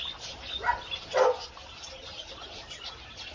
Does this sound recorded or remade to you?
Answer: recorded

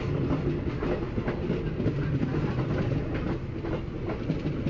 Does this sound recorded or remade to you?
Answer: recorded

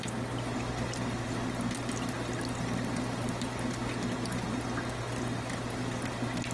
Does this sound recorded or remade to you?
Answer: recorded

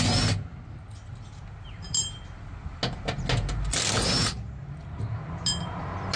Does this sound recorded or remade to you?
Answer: recorded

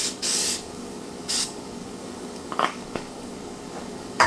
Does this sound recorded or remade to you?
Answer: remade